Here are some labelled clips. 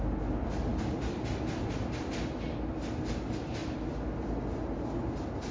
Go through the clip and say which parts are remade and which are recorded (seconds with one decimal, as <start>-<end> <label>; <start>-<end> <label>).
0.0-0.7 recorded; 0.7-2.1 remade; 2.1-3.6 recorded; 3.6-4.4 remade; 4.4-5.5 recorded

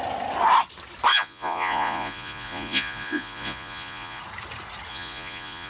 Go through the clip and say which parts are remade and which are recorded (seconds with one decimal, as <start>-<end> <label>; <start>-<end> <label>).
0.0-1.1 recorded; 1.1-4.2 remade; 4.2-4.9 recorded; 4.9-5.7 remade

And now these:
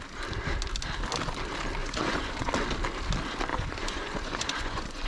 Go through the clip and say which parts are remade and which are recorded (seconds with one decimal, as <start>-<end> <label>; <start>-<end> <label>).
0.0-1.8 recorded; 1.8-2.5 remade; 2.5-3.5 recorded; 3.5-5.1 remade

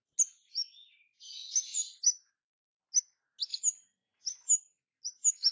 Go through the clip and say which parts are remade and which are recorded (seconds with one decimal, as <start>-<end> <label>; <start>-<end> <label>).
0.0-5.5 recorded

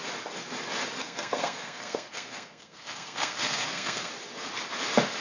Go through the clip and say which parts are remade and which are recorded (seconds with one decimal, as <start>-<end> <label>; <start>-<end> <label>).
0.0-1.0 recorded; 1.0-4.1 remade; 4.1-5.2 recorded